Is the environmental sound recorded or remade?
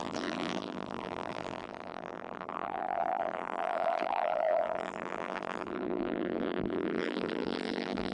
remade